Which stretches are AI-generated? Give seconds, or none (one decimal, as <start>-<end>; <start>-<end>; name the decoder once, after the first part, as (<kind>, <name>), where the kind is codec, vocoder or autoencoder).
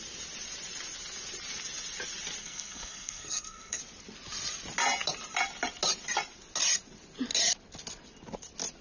2.4-3.8 (codec, SNAC)